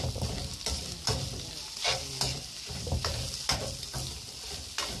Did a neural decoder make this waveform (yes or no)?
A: no